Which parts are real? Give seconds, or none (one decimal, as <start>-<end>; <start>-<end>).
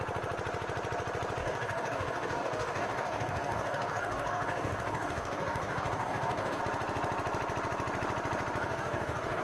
0.0-1.4; 6.6-8.6